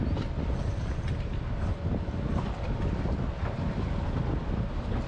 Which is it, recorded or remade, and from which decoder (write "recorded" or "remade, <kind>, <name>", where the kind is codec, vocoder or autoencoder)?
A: recorded